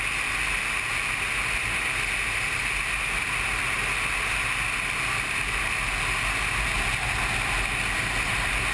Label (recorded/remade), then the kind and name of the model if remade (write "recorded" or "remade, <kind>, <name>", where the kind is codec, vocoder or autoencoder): recorded